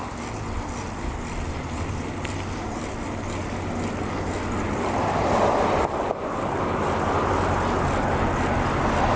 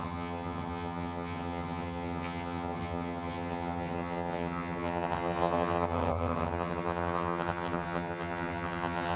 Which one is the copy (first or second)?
second